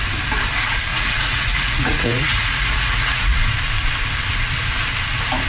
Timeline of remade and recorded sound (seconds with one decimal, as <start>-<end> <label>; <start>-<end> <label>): 0.0-0.9 recorded; 0.9-3.4 remade; 3.4-5.5 recorded